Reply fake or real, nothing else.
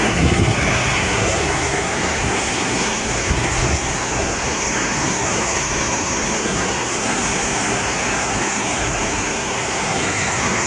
fake